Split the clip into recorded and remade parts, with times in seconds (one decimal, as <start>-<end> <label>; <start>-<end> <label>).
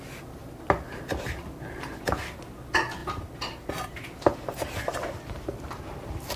0.0-0.4 recorded; 0.4-1.6 remade; 1.6-3.0 recorded; 3.0-5.1 remade; 5.1-6.4 recorded